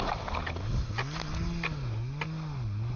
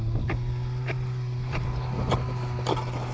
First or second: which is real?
first